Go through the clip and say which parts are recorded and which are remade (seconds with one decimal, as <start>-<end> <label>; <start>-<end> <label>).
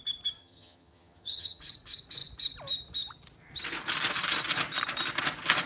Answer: 0.0-0.4 recorded; 0.4-1.6 remade; 1.6-5.7 recorded